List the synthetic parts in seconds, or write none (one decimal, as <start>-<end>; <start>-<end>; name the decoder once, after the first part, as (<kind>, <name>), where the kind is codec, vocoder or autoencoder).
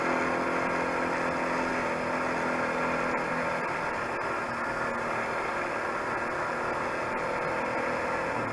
none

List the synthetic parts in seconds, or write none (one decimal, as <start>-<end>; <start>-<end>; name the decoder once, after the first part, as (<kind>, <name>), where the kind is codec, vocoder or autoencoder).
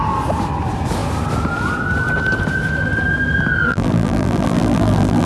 3.7-5.3 (vocoder, BigVGAN v2)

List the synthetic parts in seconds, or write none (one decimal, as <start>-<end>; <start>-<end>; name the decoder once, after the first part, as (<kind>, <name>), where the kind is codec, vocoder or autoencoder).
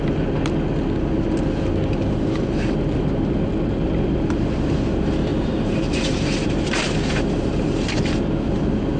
5.3-6.9 (vocoder, BigVGAN v2)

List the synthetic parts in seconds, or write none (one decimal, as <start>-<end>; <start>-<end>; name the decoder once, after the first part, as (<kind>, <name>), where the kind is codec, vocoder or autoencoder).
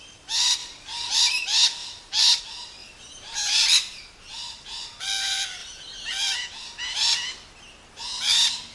0.6-1.2 (vocoder, BigVGAN v2); 1.8-2.4; 2.8-3.4; 5.6-6.1